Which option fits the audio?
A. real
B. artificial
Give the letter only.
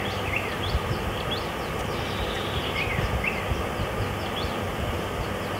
A